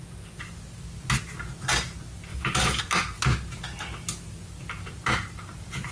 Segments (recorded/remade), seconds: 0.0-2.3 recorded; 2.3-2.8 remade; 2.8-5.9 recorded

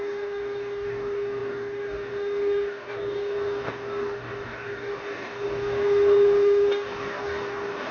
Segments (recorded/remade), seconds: 0.0-7.9 remade

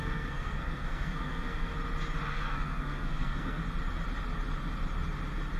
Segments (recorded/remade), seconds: 0.0-1.7 remade; 1.7-2.3 recorded; 2.3-3.6 remade; 3.6-5.6 recorded

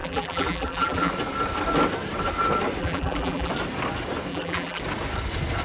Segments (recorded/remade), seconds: 0.0-1.1 remade; 1.1-2.8 recorded; 2.8-3.5 remade; 3.5-4.3 recorded; 4.3-4.8 remade; 4.8-5.6 recorded

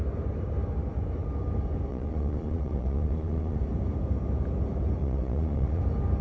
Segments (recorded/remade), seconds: 0.0-1.9 recorded; 1.9-3.6 remade; 3.6-5.0 recorded; 5.0-5.8 remade; 5.8-6.2 recorded

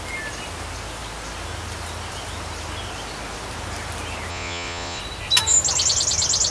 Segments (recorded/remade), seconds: 0.0-4.3 recorded; 4.3-5.0 remade; 5.0-6.5 recorded

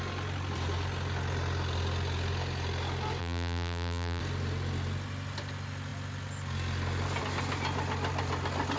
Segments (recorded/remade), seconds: 0.0-3.2 recorded; 3.2-4.2 remade; 4.2-8.8 recorded

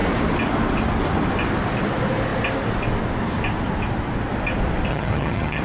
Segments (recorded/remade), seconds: 0.0-4.9 recorded; 4.9-5.6 remade